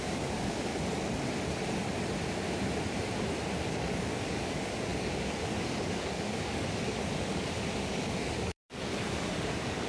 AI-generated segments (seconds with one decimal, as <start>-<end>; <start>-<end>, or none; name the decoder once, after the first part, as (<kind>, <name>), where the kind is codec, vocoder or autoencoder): 0.0-0.7 (codec, DAC); 3.7-9.9